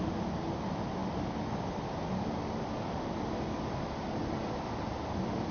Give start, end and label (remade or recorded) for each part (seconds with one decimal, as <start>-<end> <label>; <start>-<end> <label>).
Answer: 0.0-5.5 recorded